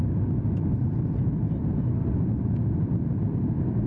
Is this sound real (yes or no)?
yes